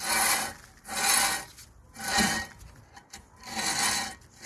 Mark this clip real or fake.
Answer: real